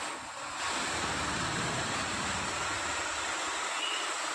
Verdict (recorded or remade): recorded